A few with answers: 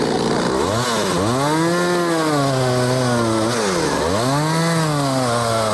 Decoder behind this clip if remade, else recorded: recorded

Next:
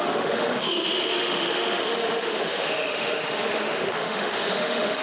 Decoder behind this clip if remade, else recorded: remade, autoencoder, DAC-VAE